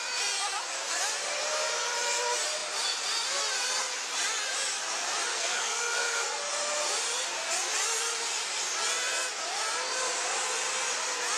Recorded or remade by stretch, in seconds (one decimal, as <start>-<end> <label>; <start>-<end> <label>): 0.0-5.3 recorded; 5.3-6.4 remade; 6.4-11.4 recorded